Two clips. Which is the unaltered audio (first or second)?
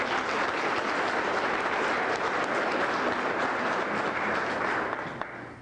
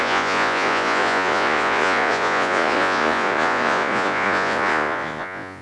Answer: first